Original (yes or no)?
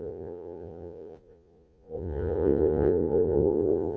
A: no